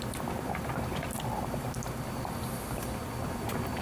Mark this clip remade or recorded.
recorded